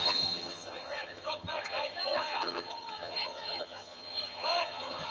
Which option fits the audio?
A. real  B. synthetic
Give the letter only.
B